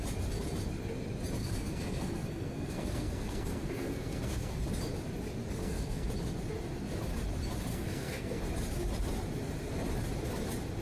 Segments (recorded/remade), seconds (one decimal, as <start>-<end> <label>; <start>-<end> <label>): 0.0-1.4 recorded; 1.4-4.6 remade; 4.6-5.6 recorded; 5.6-6.1 remade; 6.1-7.7 recorded; 7.7-8.4 remade; 8.4-10.8 recorded